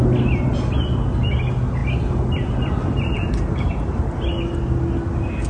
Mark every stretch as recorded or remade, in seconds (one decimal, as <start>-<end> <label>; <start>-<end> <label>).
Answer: 0.0-1.8 recorded; 1.8-3.7 remade; 3.7-5.5 recorded